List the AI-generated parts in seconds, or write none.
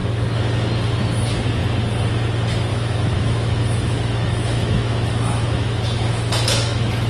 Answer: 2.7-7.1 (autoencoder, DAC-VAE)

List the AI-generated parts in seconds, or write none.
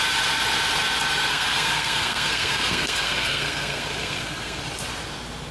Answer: 1.3-4.6 (codec, SNAC)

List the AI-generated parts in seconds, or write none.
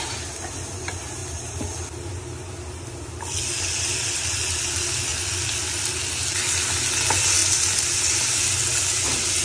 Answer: none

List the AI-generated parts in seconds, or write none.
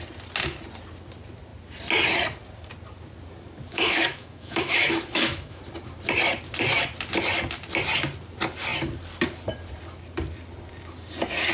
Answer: 3.7-5.6 (autoencoder, DAC-VAE)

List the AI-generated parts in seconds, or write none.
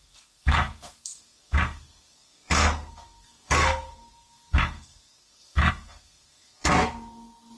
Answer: 0.0-6.7 (codec, SNAC)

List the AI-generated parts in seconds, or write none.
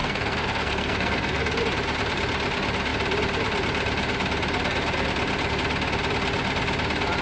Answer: 0.0-1.6 (codec, SNAC)